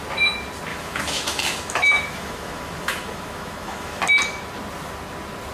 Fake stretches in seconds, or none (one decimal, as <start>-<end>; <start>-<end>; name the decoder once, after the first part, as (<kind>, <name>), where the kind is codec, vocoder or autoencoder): 0.7-4.0 (autoencoder, DAC-VAE)